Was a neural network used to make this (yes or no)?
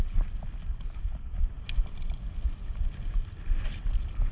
no